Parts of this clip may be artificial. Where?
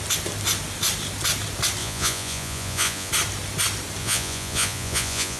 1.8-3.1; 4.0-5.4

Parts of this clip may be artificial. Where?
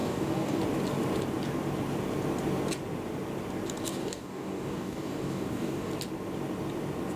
0.0-0.6; 3.9-5.9